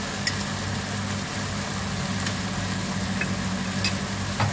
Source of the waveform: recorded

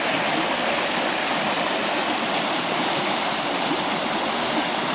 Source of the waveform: recorded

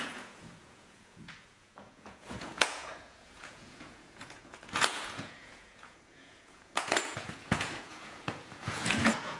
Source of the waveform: remade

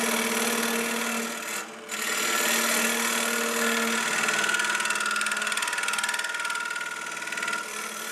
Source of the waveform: recorded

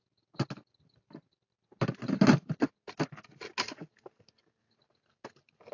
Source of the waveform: recorded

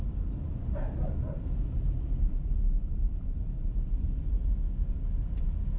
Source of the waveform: recorded